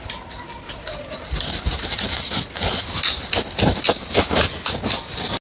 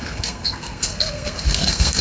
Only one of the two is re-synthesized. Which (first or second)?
second